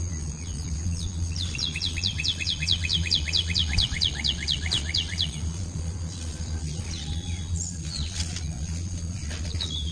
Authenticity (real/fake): fake